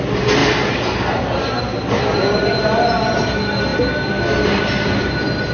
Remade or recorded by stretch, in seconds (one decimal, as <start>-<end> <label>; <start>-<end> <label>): 0.0-5.5 recorded